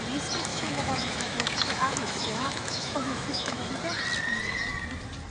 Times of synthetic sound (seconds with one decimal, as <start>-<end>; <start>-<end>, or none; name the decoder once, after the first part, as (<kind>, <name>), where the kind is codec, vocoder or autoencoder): 0.5-3.7 (autoencoder, DAC-VAE)